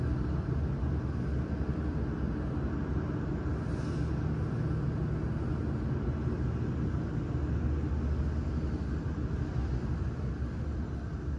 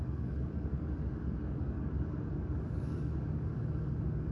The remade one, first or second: second